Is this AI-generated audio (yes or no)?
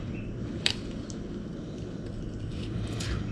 yes